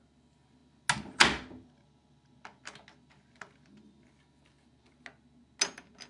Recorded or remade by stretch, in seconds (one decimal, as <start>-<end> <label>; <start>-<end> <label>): 0.0-6.1 recorded